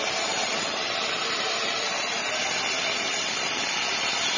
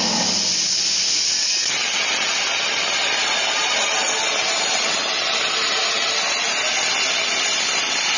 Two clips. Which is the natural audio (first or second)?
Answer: second